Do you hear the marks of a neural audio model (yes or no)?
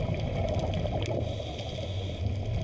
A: no